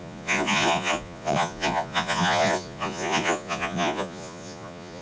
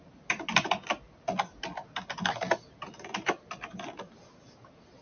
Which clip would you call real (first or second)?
second